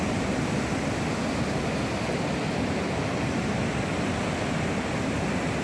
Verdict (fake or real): real